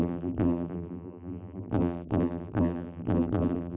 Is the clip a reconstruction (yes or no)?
yes